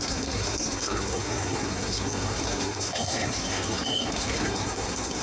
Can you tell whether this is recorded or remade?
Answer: remade